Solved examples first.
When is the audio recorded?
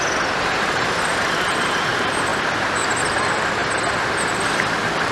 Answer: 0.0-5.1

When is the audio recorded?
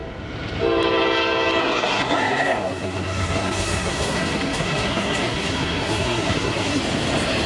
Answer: 0.0-1.6; 6.8-7.5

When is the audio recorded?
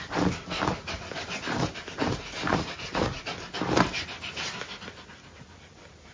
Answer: 0.0-2.5; 3.3-6.1